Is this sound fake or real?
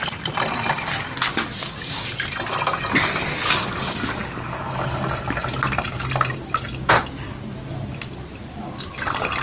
real